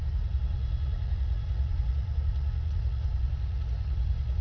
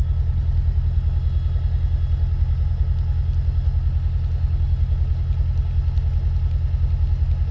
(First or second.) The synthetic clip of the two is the first